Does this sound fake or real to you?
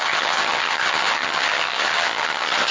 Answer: fake